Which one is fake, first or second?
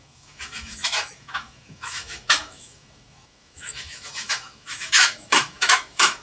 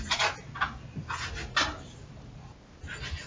first